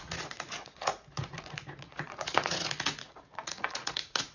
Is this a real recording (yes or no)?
no